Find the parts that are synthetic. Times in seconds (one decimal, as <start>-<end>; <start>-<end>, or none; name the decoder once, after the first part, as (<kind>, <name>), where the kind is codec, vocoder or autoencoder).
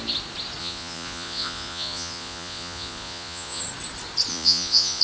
0.6-3.6 (vocoder, Vocos); 4.3-5.0